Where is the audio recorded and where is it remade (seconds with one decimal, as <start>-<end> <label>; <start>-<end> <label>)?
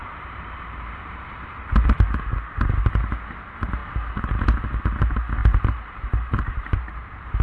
0.0-1.7 remade; 1.7-5.4 recorded; 5.4-7.4 remade